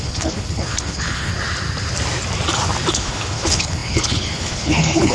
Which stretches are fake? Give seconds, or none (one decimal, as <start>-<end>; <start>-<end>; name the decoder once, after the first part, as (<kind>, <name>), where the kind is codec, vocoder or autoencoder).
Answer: 0.0-1.3 (codec, HILCodec); 2.9-5.1